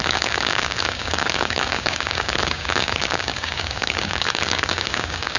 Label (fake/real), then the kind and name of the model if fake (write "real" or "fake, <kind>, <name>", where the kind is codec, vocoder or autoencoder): fake, codec, DAC